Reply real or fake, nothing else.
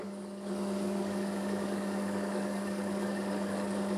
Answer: fake